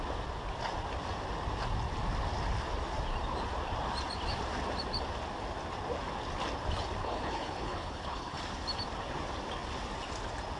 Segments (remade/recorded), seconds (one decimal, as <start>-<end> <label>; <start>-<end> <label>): 0.0-7.0 recorded; 7.0-8.4 remade; 8.4-10.6 recorded